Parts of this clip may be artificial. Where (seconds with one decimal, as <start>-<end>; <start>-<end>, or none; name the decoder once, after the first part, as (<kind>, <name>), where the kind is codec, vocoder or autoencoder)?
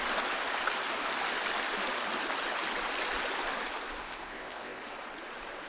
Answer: 4.0-4.8 (codec, ZipCodec)